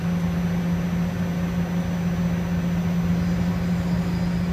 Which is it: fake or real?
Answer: real